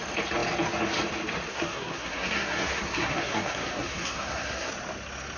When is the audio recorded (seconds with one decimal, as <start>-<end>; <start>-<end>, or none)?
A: 0.0-1.5; 4.7-5.4